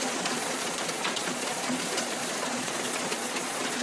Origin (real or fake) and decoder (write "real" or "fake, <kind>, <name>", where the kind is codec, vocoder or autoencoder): fake, vocoder, Vocos